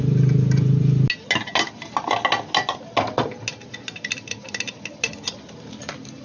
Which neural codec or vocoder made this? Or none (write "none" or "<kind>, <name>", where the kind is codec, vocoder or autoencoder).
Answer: none